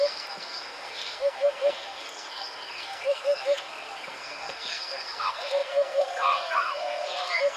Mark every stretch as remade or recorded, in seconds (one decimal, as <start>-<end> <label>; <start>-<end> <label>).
0.0-7.6 remade